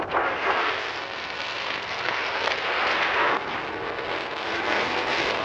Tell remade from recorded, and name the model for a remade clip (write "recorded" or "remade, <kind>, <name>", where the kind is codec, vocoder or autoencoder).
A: remade, codec, SNAC